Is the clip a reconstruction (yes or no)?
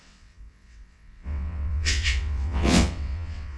yes